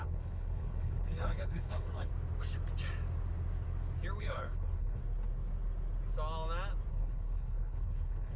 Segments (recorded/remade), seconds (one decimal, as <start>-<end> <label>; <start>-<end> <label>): 0.0-2.1 remade; 2.1-4.2 recorded; 4.2-5.0 remade; 5.0-6.9 recorded; 6.9-8.4 remade